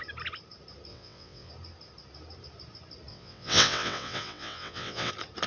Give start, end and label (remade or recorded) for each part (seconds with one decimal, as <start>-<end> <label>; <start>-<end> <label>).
0.0-0.9 recorded; 0.9-1.5 remade; 1.5-3.1 recorded; 3.1-5.1 remade; 5.1-5.5 recorded